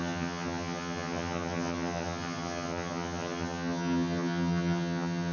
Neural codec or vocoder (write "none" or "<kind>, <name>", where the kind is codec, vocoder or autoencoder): vocoder, HiFi-GAN